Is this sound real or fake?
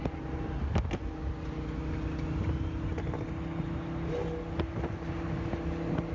real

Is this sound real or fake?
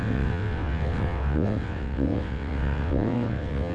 fake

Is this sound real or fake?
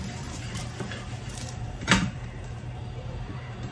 fake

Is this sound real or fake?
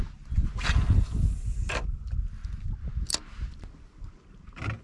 real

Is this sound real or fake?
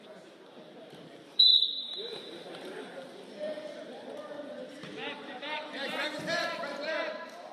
fake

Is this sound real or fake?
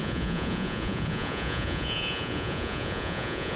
fake